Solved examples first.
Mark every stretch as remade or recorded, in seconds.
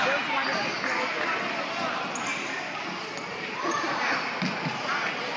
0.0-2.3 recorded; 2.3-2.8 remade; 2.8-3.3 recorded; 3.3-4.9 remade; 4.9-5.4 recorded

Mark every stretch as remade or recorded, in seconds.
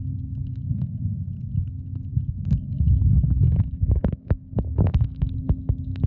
0.0-1.1 remade; 1.1-1.7 recorded; 1.7-6.1 remade